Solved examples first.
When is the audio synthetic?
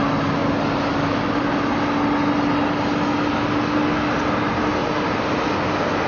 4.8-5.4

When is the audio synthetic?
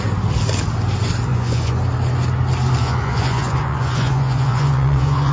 1.3-1.8; 2.8-5.3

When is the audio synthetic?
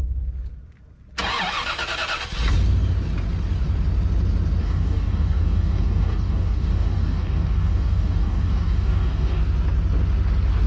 4.6-9.4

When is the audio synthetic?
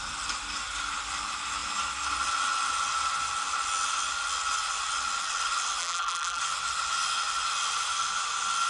5.8-6.4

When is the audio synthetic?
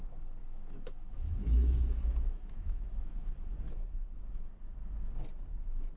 0.4-3.3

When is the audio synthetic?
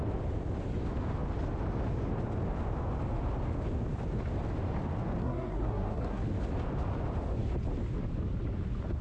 5.2-6.2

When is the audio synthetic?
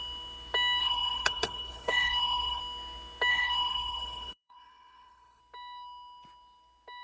0.8-2.6; 3.3-5.4